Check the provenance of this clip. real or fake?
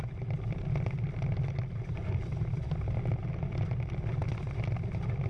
real